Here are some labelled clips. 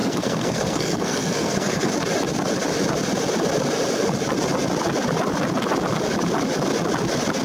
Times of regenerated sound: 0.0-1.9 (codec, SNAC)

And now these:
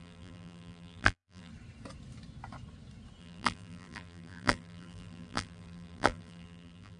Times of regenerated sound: 0.0-1.5 (vocoder, BigVGAN v2); 3.2-7.0

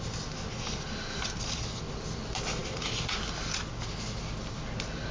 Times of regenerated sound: none

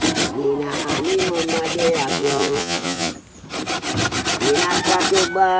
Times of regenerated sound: 2.1-3.1 (vocoder, Vocos)

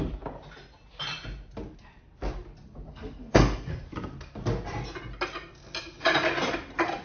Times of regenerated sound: 2.9-3.7 (codec, SNAC)

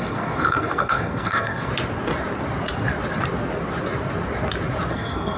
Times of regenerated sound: 0.0-1.7 (codec, SNAC); 4.9-5.4

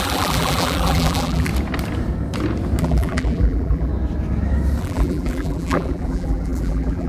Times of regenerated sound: 0.0-1.5 (vocoder, BigVGAN v2); 2.8-3.9; 4.8-7.1